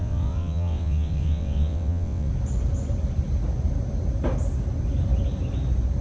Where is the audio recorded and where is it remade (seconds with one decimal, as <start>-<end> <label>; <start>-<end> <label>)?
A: 0.0-2.3 remade; 2.3-6.0 recorded